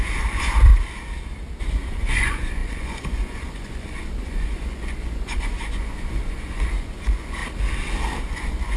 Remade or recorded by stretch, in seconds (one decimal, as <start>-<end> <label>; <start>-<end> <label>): 0.0-0.7 remade; 0.7-1.6 recorded; 1.6-7.4 remade; 7.4-8.2 recorded; 8.2-8.8 remade